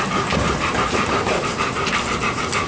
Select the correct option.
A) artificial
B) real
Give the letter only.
B